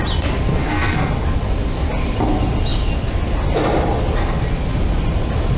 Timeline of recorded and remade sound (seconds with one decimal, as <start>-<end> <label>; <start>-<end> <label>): 0.0-0.6 recorded; 0.6-1.1 remade; 1.1-5.6 recorded